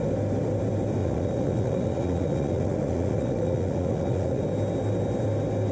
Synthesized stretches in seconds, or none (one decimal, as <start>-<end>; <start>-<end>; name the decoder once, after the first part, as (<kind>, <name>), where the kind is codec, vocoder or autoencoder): 1.0-4.4 (vocoder, Vocos)